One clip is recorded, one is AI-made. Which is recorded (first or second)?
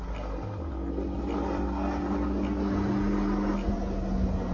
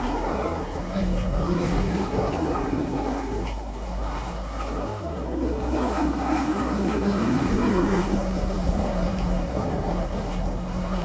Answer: first